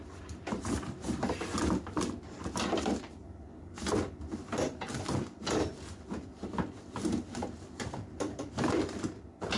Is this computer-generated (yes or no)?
yes